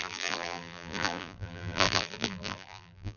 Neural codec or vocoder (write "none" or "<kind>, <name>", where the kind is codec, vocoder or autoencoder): vocoder, BigVGAN v2